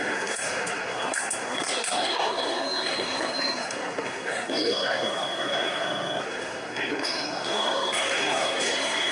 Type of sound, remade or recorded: remade